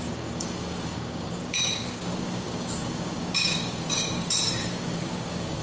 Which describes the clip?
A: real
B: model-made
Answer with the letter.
B